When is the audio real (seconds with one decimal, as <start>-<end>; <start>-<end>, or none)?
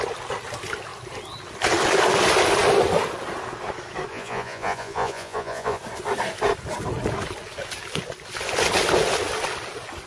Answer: 0.0-4.1; 5.8-10.1